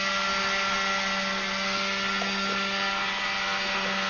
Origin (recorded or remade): recorded